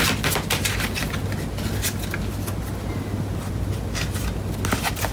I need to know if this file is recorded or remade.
recorded